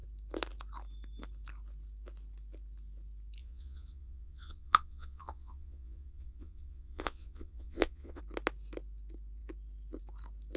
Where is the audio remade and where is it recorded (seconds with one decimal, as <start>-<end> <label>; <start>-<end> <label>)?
0.0-3.4 recorded; 3.4-8.2 remade; 8.2-10.6 recorded